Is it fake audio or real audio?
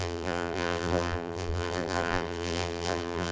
fake